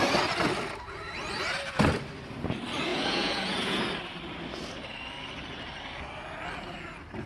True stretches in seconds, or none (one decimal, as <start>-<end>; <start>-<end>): 0.0-2.9; 3.8-7.3